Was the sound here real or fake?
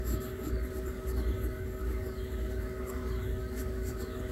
fake